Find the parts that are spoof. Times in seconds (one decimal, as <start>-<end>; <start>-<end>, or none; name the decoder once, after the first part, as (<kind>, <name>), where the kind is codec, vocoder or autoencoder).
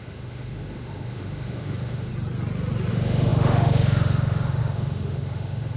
0.0-2.1 (autoencoder, DAC-VAE); 2.9-5.8